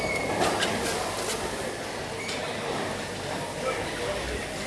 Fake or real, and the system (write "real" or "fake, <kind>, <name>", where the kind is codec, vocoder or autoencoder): real